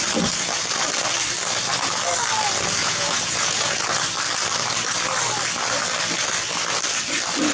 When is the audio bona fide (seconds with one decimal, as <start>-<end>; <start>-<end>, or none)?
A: 0.0-2.8; 3.8-7.5